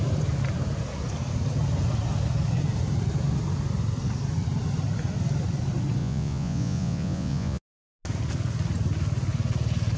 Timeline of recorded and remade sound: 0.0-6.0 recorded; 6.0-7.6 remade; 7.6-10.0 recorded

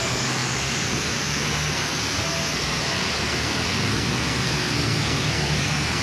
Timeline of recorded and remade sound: 0.0-6.0 remade

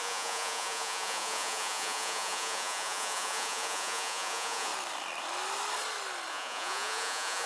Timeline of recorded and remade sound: 0.0-4.7 remade; 4.7-6.3 recorded; 6.3-7.5 remade

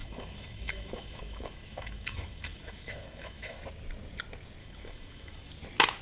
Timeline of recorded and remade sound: 0.0-3.6 remade; 3.6-4.6 recorded; 4.6-5.5 remade; 5.5-6.0 recorded

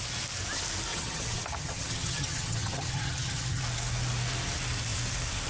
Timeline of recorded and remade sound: 0.0-0.9 recorded; 0.9-3.6 remade; 3.6-5.5 recorded

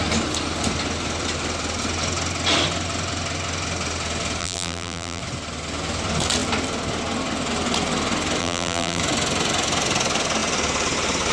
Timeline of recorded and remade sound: 0.0-4.4 recorded; 4.4-5.2 remade; 5.2-8.4 recorded; 8.4-9.0 remade; 9.0-11.3 recorded

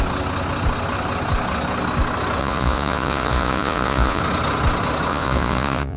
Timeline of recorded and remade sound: 0.0-2.4 recorded; 2.4-4.2 remade; 4.2-5.1 recorded; 5.1-6.0 remade